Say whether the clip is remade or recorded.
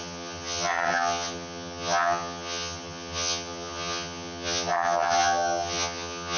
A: remade